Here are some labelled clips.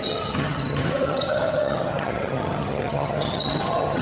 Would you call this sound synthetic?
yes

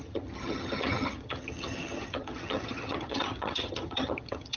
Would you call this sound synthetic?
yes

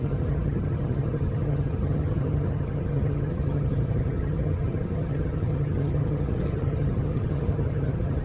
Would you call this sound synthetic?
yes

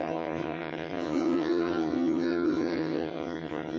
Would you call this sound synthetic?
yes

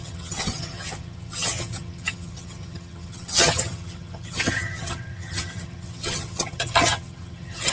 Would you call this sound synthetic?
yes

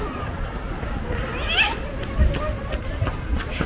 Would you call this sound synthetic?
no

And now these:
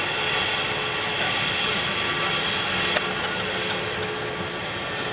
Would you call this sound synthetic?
no